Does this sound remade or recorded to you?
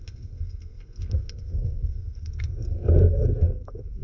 remade